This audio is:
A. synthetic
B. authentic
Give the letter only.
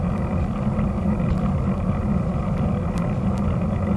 B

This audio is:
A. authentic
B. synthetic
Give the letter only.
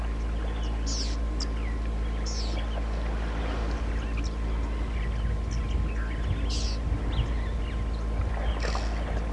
A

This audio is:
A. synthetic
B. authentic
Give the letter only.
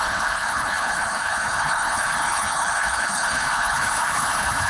A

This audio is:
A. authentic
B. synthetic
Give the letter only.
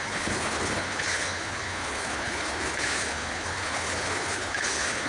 B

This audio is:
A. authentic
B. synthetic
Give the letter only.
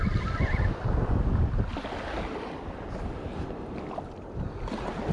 A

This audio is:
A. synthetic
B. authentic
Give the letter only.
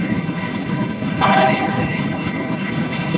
A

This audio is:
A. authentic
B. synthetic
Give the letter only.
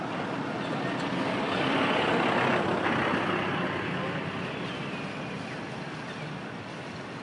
A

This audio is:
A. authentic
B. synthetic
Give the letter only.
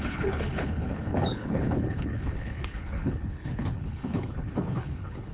B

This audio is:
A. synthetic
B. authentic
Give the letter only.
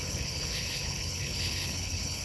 A